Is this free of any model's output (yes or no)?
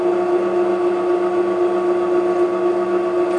yes